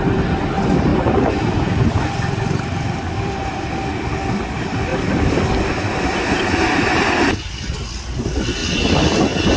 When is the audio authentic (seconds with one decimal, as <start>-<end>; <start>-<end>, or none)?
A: 0.0-0.9; 3.6-8.6; 9.2-9.6